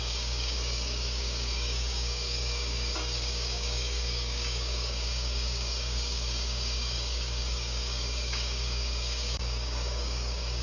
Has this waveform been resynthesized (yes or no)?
yes